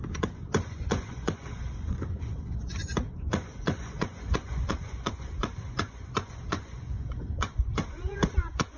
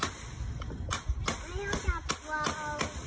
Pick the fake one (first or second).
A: first